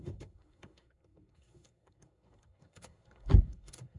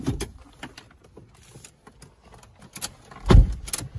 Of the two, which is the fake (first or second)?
first